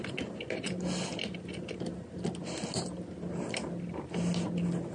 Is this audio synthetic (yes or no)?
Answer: no